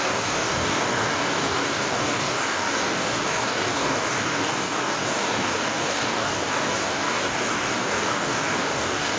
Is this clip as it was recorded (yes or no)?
no